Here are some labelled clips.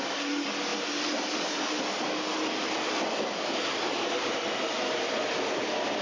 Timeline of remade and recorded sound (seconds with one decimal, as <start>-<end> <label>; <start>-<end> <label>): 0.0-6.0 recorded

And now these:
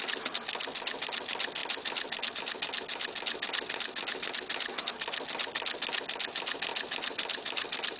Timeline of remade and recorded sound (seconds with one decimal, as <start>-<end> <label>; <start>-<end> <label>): 0.0-1.6 recorded; 1.6-2.3 remade; 2.3-6.7 recorded; 6.7-8.0 remade

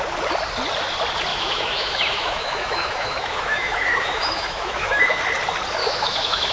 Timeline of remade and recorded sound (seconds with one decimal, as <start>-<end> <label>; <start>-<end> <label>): 0.0-1.3 recorded; 1.3-5.2 remade; 5.2-5.8 recorded; 5.8-6.5 remade

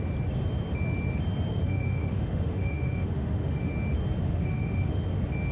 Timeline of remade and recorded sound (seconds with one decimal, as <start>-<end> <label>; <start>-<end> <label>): 0.0-1.5 recorded; 1.5-3.7 remade; 3.7-4.2 recorded; 4.2-5.0 remade; 5.0-5.5 recorded

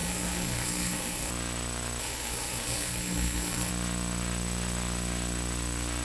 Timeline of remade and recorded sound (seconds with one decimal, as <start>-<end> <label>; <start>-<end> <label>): 0.0-1.3 remade; 1.3-2.0 recorded; 2.0-3.7 remade; 3.7-6.0 recorded

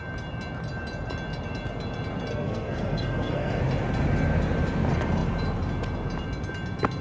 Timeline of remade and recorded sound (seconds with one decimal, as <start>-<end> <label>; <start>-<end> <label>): 0.0-2.3 recorded; 2.3-3.6 remade; 3.6-7.0 recorded

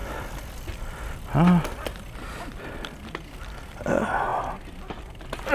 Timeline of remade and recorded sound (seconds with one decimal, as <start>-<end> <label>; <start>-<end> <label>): 0.0-5.5 recorded

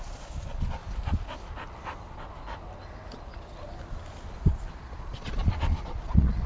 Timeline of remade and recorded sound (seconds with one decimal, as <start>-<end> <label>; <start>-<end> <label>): 0.0-0.8 remade; 0.8-4.7 recorded; 4.7-6.5 remade